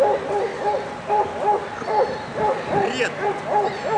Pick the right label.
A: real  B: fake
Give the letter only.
A